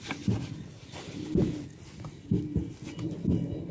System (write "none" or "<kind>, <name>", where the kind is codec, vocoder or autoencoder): none